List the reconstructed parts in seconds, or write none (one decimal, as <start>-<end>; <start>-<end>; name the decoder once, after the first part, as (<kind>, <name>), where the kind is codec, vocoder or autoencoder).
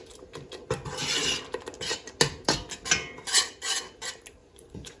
4.4-5.0 (vocoder, Vocos)